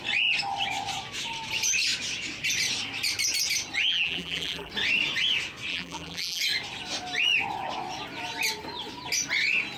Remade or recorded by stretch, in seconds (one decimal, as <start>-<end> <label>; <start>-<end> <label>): 0.0-3.9 recorded; 3.9-4.7 remade; 4.7-5.7 recorded; 5.7-6.4 remade; 6.4-9.8 recorded